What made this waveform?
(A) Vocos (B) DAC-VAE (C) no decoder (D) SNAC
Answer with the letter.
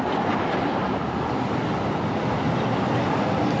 C